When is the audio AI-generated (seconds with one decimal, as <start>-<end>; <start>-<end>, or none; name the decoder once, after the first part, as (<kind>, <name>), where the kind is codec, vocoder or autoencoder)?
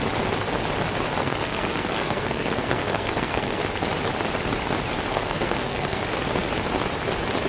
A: 1.2-3.6 (codec, SNAC); 5.1-6.0